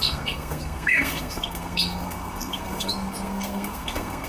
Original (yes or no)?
no